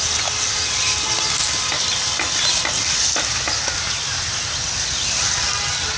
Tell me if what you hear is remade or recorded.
recorded